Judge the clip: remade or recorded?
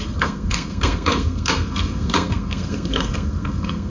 remade